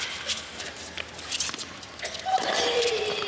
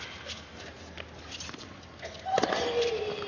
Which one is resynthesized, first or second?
first